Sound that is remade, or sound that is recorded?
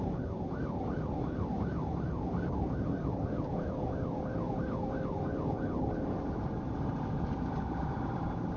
remade